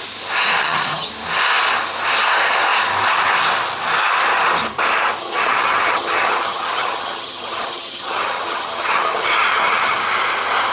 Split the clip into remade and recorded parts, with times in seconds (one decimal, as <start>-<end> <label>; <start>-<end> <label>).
0.0-0.6 recorded; 0.6-1.1 remade; 1.1-5.2 recorded; 5.2-10.0 remade; 10.0-10.7 recorded